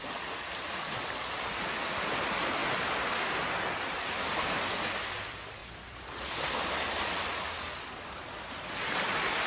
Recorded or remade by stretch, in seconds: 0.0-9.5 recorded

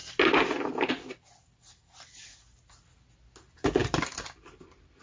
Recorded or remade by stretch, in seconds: 0.0-5.0 recorded

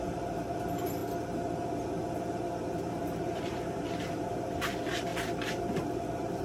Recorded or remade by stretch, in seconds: 0.0-1.0 remade; 1.0-2.9 recorded; 2.9-6.4 remade

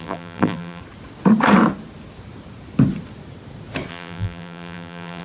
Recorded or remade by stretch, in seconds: 0.0-0.8 remade; 0.8-3.9 recorded; 3.9-5.2 remade